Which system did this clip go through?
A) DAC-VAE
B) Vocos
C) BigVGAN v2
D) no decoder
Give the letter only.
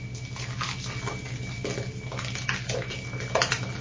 D